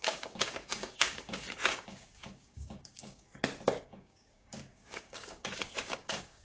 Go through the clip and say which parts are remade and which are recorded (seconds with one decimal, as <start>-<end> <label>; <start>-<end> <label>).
0.0-3.3 remade; 3.3-3.8 recorded; 3.8-6.4 remade